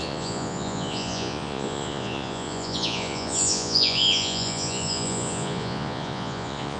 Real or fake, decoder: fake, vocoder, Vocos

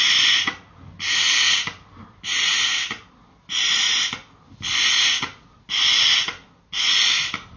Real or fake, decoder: real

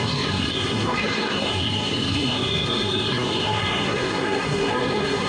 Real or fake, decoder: fake, codec, SNAC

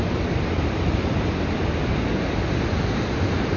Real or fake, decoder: real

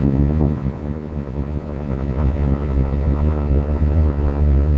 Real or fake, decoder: fake, vocoder, Vocos